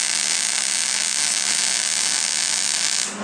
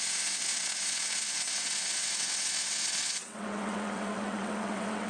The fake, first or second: second